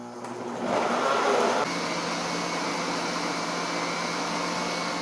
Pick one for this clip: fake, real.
real